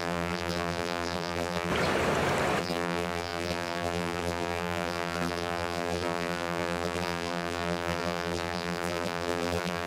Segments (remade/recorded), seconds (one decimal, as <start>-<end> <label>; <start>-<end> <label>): 0.0-1.7 remade; 1.7-2.6 recorded; 2.6-9.9 remade